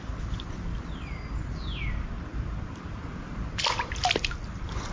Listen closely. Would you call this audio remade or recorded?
recorded